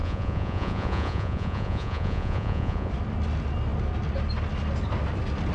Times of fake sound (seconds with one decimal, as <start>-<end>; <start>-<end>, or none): 0.0-2.9